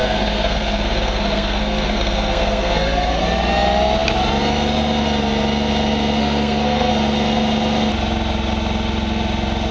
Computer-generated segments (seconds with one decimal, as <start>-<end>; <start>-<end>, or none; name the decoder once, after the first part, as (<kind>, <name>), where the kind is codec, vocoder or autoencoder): 0.0-3.2 (codec, SNAC); 6.2-6.9